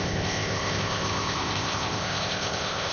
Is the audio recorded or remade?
remade